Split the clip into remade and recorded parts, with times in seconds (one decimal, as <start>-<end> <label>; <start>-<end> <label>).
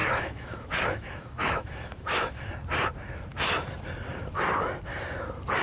0.0-2.5 remade; 2.5-5.6 recorded